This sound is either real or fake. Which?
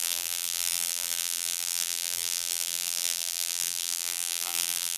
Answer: fake